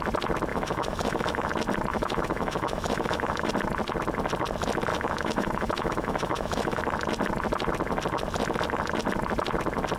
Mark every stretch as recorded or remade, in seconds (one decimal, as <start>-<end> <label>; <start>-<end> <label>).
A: 0.0-0.5 recorded; 0.5-1.5 remade; 1.5-1.9 recorded; 1.9-3.5 remade; 3.5-4.9 recorded; 4.9-6.8 remade; 6.8-10.0 recorded

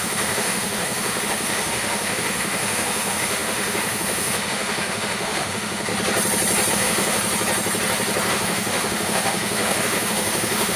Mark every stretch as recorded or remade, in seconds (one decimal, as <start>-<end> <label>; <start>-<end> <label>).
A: 0.0-5.9 remade; 5.9-6.7 recorded; 6.7-7.2 remade; 7.2-8.3 recorded; 8.3-10.8 remade

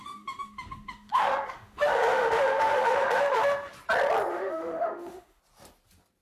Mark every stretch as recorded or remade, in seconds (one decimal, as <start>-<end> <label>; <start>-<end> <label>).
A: 0.0-3.7 remade; 3.7-4.3 recorded; 4.3-5.4 remade; 5.4-6.2 recorded

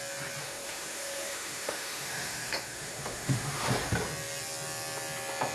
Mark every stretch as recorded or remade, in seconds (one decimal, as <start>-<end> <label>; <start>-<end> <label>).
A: 0.0-0.4 recorded; 0.4-3.7 remade; 3.7-5.5 recorded

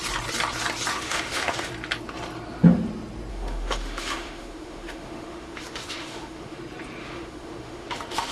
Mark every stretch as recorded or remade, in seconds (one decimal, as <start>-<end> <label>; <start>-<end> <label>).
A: 0.0-0.9 recorded; 0.9-1.7 remade; 1.7-3.3 recorded; 3.3-6.6 remade; 6.6-7.0 recorded; 7.0-8.3 remade

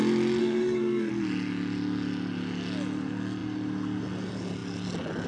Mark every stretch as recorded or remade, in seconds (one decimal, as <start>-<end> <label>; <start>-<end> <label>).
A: 0.0-0.4 recorded; 0.4-1.1 remade; 1.1-5.3 recorded

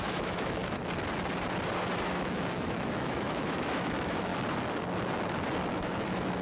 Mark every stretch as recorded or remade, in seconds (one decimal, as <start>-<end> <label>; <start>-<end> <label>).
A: 0.0-0.6 remade; 0.6-2.0 recorded; 2.0-4.3 remade; 4.3-5.7 recorded; 5.7-6.4 remade

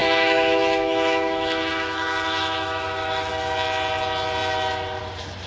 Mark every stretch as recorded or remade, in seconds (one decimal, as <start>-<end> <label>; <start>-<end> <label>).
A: 0.0-3.3 remade; 3.3-5.5 recorded